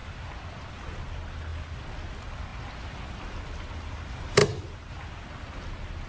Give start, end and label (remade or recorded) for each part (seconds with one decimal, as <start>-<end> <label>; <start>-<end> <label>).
0.0-6.1 recorded